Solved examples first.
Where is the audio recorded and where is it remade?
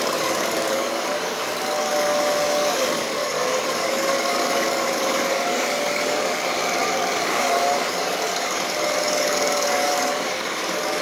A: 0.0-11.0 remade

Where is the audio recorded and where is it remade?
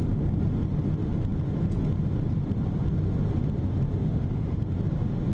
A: 0.0-4.0 recorded; 4.0-4.6 remade; 4.6-5.3 recorded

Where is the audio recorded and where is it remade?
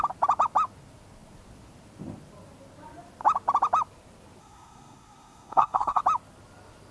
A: 0.0-4.4 recorded; 4.4-6.0 remade; 6.0-6.9 recorded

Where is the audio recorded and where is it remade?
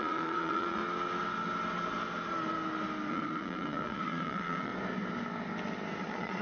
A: 0.0-0.8 remade; 0.8-3.1 recorded; 3.1-4.7 remade; 4.7-6.0 recorded; 6.0-6.4 remade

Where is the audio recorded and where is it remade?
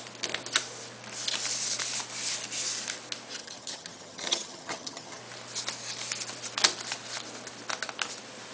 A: 0.0-3.4 recorded; 3.4-5.2 remade; 5.2-8.5 recorded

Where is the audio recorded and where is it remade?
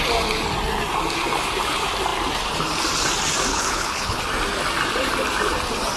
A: 0.0-3.5 recorded; 3.5-4.2 remade; 4.2-6.0 recorded